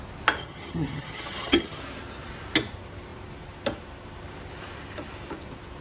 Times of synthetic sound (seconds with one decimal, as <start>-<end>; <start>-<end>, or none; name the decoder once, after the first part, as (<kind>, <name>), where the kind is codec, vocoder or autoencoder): 0.4-1.8 (vocoder, HiFi-GAN)